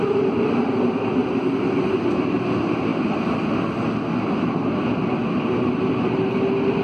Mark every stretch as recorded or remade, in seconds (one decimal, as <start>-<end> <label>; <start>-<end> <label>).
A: 0.0-6.8 recorded

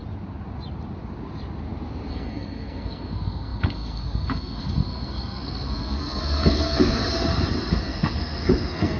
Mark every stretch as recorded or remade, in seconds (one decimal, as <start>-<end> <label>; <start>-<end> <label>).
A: 0.0-2.1 recorded; 2.1-7.0 remade; 7.0-7.8 recorded; 7.8-9.0 remade